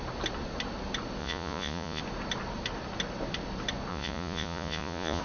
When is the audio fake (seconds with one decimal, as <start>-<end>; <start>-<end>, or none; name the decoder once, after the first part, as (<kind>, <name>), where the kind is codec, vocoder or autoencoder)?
1.2-2.0 (vocoder, Vocos); 3.9-5.2